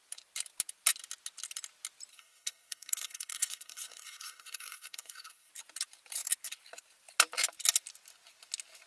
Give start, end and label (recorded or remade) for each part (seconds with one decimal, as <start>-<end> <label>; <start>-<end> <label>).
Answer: 0.0-2.1 recorded; 2.1-5.5 remade; 5.5-8.9 recorded